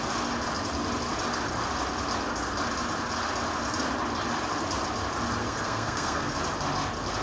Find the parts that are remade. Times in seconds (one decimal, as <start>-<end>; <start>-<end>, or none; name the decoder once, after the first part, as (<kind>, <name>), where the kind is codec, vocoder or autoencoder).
5.4-6.3 (codec, SNAC)